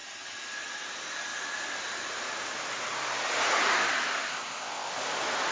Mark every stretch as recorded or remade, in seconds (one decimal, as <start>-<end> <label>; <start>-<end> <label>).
0.0-4.3 recorded; 4.3-4.9 remade; 4.9-5.5 recorded